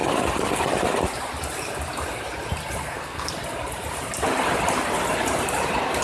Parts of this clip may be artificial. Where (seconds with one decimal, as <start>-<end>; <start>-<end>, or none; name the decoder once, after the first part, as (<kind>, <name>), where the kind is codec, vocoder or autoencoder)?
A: 2.8-3.3 (codec, SNAC)